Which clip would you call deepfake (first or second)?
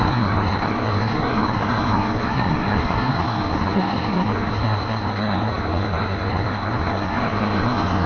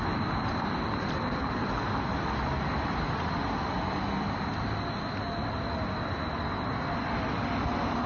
first